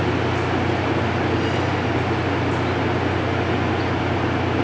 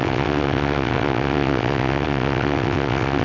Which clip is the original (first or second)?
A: first